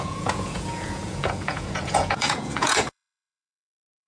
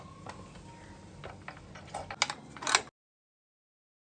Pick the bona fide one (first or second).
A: second